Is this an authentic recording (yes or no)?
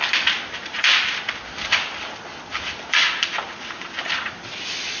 yes